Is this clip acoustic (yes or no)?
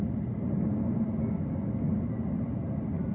yes